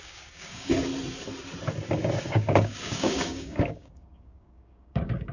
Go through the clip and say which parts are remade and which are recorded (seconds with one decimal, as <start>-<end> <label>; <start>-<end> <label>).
0.0-0.9 remade; 0.9-2.2 recorded; 2.2-5.3 remade